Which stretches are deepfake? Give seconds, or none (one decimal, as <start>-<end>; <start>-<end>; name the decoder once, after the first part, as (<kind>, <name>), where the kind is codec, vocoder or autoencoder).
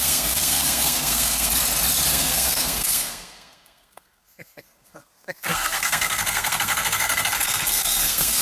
0.0-1.5 (codec, SNAC); 2.1-8.4